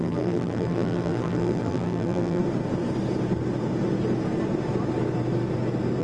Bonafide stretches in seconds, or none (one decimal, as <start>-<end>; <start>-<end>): 2.4-6.0